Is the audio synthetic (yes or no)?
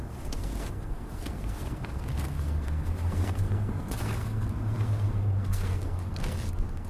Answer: yes